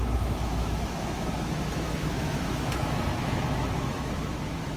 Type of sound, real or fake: fake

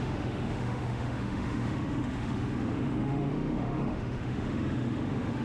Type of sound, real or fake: fake